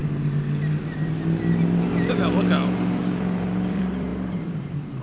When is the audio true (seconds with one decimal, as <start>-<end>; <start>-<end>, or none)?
0.0-3.0